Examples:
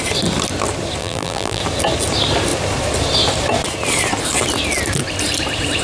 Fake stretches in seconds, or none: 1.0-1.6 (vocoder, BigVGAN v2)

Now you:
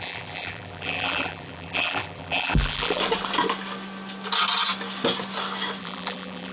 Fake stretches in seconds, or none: 0.0-3.0 (vocoder, BigVGAN v2); 5.8-6.5

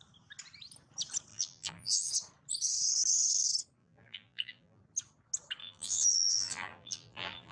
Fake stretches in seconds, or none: 1.3-2.1 (vocoder, BigVGAN v2); 3.8-4.8; 5.6-7.5